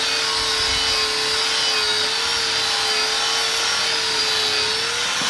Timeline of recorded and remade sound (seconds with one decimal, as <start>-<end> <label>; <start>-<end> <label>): 0.0-5.3 recorded